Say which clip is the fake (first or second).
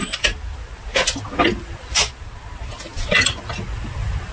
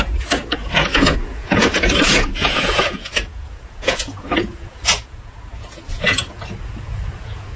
second